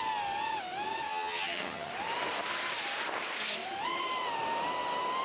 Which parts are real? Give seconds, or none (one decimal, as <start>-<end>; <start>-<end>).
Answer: 0.0-1.1; 1.9-5.2